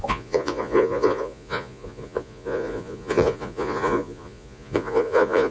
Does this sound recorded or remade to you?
remade